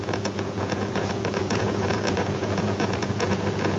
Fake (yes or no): yes